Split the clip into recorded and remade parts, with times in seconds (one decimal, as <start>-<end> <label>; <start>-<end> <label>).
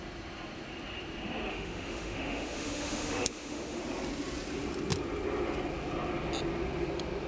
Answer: 0.0-1.5 recorded; 1.5-3.8 remade; 3.8-7.3 recorded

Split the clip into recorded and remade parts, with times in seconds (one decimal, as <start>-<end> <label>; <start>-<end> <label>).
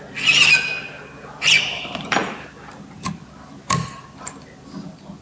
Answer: 0.0-5.2 recorded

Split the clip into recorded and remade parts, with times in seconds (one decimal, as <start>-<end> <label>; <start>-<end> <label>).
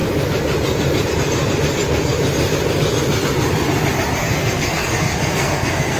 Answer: 0.0-4.2 recorded; 4.2-6.0 remade